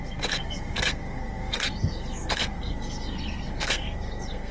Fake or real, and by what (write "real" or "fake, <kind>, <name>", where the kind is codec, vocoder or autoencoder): fake, codec, SNAC